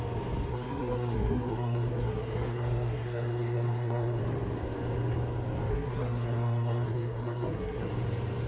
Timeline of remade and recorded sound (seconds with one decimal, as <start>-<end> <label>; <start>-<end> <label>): 0.0-0.5 recorded; 0.5-4.2 remade; 4.2-5.7 recorded; 5.7-7.9 remade; 7.9-8.5 recorded